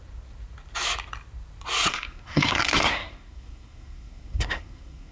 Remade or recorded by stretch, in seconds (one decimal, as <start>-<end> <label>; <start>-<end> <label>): 0.0-1.9 recorded; 1.9-5.1 remade